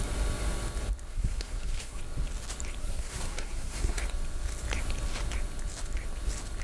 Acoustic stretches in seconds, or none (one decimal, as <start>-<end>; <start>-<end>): 0.0-1.1; 2.0-2.8; 4.0-6.6